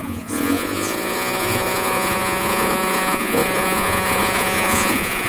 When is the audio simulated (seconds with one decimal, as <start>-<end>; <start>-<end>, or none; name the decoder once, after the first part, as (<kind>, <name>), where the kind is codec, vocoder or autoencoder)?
0.0-5.3 (vocoder, Vocos)